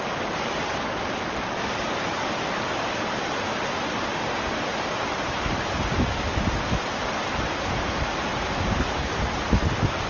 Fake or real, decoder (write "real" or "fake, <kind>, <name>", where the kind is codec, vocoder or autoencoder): real